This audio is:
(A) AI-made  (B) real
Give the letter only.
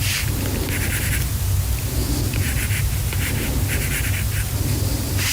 B